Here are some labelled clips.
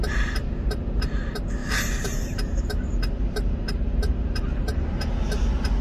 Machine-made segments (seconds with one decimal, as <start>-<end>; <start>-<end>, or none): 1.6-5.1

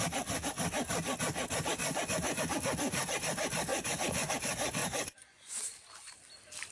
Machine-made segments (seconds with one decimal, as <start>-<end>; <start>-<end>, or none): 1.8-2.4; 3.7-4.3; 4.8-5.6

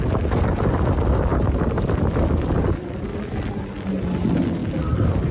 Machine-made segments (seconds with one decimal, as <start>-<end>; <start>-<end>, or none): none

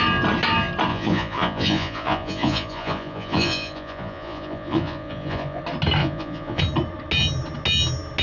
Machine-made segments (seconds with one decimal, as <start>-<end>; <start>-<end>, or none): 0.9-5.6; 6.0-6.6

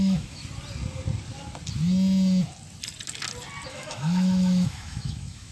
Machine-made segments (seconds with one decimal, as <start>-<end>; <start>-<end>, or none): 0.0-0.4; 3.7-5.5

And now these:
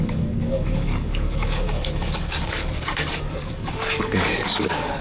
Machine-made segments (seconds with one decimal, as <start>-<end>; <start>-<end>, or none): 0.0-5.0

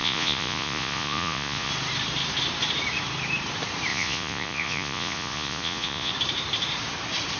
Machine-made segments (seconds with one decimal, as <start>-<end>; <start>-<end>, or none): 0.0-1.7; 3.9-6.1